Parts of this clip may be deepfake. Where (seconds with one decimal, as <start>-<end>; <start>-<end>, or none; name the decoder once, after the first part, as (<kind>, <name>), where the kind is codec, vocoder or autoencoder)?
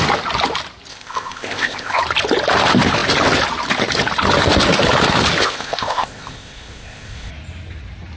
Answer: 0.9-2.0 (codec, ZipCodec); 5.4-7.3